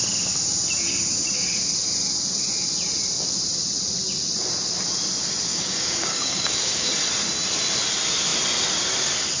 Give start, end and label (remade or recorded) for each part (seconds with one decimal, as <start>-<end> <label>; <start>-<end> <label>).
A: 0.0-5.5 recorded; 5.5-6.9 remade; 6.9-9.4 recorded